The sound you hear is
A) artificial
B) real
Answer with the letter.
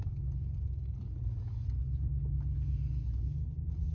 B